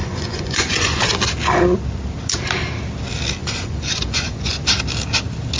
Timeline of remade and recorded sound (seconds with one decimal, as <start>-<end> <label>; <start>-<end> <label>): 0.0-1.0 remade; 1.0-3.4 recorded; 3.4-4.7 remade; 4.7-5.6 recorded